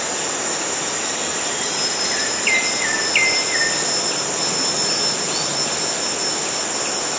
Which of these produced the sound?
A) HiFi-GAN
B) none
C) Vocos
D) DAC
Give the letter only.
B